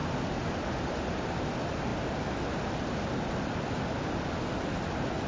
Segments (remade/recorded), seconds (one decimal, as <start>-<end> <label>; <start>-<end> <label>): 0.0-5.3 recorded